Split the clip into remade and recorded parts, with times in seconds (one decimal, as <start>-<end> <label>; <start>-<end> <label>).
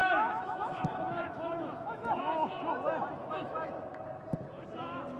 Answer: 0.0-2.6 remade; 2.6-3.2 recorded; 3.2-3.7 remade; 3.7-5.2 recorded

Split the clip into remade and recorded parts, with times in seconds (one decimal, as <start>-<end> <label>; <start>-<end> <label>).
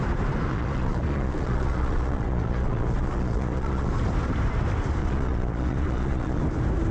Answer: 0.0-0.5 recorded; 0.5-3.9 remade; 3.9-5.0 recorded; 5.0-6.4 remade; 6.4-6.9 recorded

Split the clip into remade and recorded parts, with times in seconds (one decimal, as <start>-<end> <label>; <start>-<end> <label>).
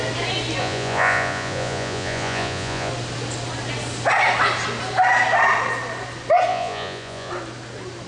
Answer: 0.0-0.6 recorded; 0.6-2.9 remade; 2.9-6.5 recorded; 6.5-7.3 remade; 7.3-8.1 recorded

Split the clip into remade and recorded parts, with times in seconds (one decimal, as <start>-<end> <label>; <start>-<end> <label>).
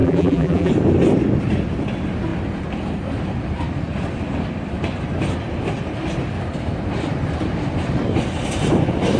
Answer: 0.0-0.7 remade; 0.7-9.2 recorded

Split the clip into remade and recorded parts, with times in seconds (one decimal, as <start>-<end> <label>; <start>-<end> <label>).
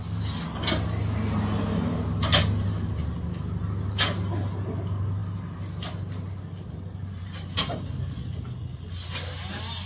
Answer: 0.0-9.9 recorded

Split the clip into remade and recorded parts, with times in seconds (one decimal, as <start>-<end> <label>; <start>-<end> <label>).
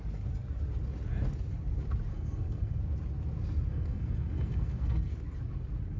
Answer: 0.0-2.1 recorded; 2.1-2.8 remade; 2.8-3.7 recorded; 3.7-5.1 remade; 5.1-6.0 recorded